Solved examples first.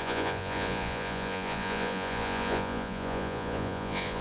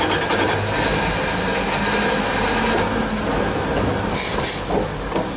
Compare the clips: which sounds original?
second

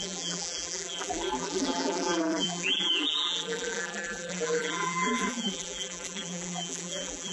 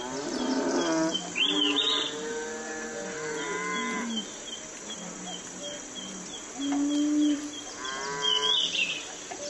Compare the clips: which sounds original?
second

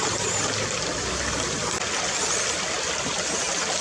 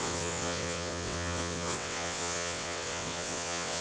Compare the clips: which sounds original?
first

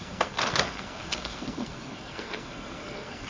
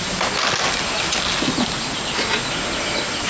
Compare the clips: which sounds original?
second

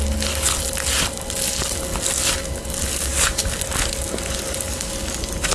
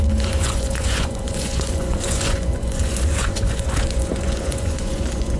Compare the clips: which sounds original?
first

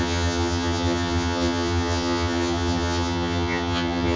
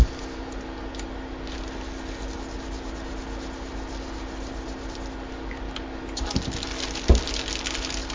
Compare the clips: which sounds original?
second